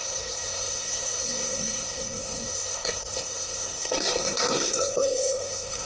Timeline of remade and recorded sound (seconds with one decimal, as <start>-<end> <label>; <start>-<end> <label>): 0.0-5.9 remade